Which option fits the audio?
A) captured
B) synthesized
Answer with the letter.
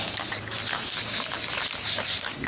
A